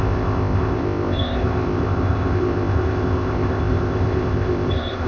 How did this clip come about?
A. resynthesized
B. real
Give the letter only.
A